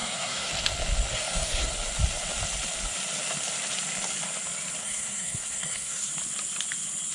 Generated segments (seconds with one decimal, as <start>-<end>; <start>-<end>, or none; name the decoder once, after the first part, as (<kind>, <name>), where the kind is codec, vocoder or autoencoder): 0.0-0.5 (codec, SNAC); 1.1-1.7; 4.8-6.1